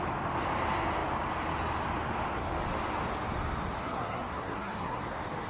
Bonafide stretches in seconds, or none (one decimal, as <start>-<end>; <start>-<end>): 0.0-3.8; 5.0-5.5